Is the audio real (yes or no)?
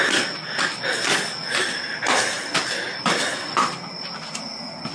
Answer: yes